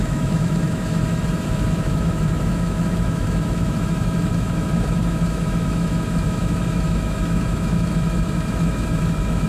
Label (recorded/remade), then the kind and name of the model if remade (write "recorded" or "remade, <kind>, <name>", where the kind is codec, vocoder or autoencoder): remade, autoencoder, DAC-VAE